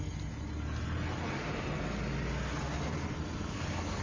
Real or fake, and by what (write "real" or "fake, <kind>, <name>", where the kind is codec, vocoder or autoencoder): real